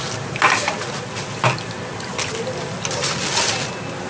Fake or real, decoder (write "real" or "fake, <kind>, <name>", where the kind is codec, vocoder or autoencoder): real